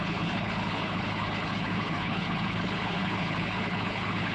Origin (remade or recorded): remade